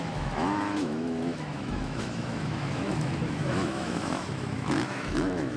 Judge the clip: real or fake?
fake